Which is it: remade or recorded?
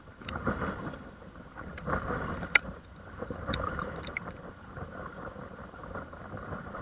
remade